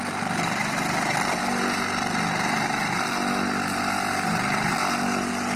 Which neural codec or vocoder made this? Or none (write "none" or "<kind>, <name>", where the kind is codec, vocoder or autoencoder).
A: none